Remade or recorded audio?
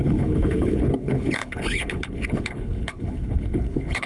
remade